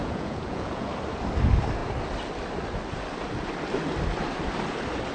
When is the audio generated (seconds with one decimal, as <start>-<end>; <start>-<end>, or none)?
0.0-0.9